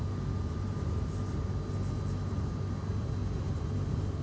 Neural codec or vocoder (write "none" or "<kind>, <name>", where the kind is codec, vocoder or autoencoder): none